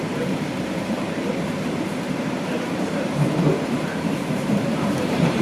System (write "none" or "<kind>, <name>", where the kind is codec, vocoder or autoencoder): vocoder, BigVGAN v2